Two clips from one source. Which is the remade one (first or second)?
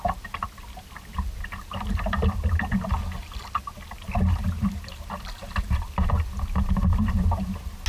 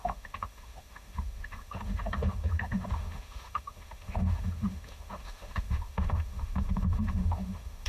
second